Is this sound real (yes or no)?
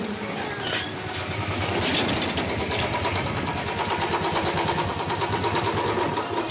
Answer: yes